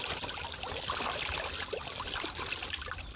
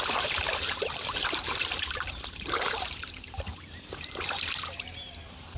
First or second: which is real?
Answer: first